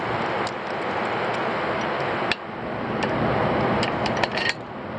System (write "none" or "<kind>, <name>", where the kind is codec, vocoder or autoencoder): none